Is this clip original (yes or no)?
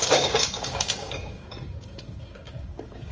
no